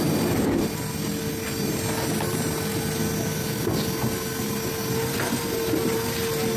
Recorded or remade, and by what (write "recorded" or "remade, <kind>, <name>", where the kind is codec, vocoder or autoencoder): recorded